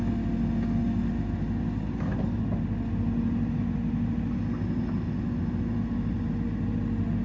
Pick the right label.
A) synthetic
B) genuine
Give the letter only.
B